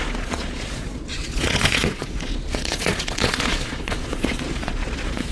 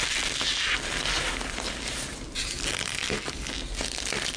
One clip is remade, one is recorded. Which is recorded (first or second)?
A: second